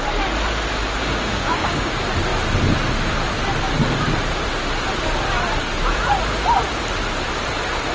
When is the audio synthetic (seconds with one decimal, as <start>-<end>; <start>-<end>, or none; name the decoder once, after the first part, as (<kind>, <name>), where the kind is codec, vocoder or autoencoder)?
1.0-1.9 (codec, DAC)